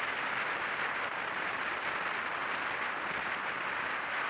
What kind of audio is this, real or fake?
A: real